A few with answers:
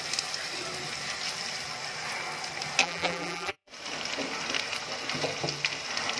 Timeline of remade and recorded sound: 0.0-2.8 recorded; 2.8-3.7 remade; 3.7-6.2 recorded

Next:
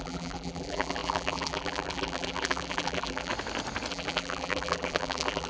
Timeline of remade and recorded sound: 0.0-3.3 remade; 3.3-3.9 recorded; 3.9-5.5 remade

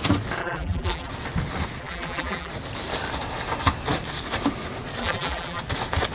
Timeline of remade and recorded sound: 0.0-0.4 recorded; 0.4-1.1 remade; 1.1-1.8 recorded; 1.8-2.5 remade; 2.5-5.0 recorded; 5.0-5.6 remade; 5.6-6.1 recorded